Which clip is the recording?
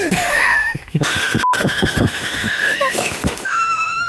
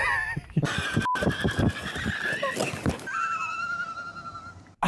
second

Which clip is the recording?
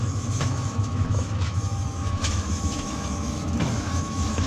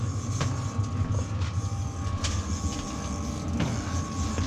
second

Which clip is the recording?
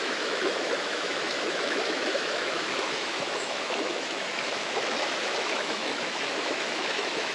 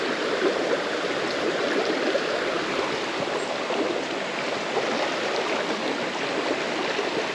second